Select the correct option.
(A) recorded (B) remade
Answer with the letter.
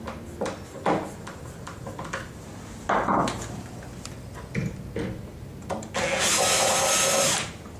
A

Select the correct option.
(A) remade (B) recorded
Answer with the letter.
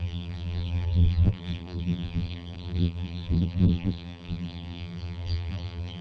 A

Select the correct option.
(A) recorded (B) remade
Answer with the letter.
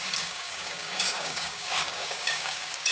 B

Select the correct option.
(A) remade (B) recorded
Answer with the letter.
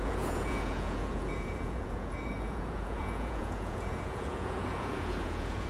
A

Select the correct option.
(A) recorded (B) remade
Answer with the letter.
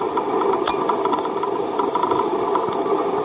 B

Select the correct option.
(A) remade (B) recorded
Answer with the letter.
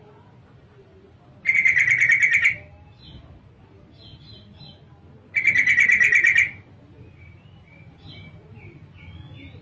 B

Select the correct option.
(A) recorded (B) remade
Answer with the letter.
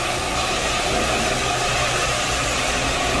A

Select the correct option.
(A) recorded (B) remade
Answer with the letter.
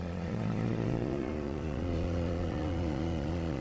B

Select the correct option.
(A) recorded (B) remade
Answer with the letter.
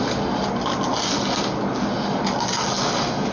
A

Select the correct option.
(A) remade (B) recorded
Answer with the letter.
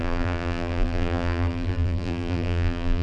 A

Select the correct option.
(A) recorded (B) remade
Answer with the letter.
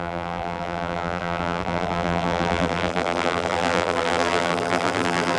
B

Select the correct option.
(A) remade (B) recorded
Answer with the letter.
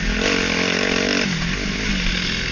B